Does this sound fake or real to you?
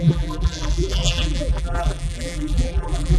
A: fake